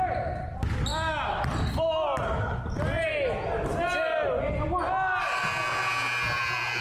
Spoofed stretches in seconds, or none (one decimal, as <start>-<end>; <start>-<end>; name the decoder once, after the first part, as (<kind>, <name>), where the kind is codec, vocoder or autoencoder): none